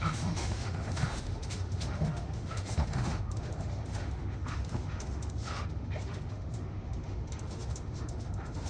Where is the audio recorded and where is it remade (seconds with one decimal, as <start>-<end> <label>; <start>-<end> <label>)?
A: 0.0-8.7 remade